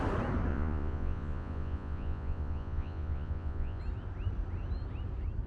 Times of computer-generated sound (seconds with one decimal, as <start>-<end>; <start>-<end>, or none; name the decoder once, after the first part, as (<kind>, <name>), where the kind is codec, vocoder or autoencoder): 0.5-3.8 (vocoder, Vocos)